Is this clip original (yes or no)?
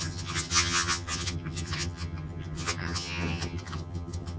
no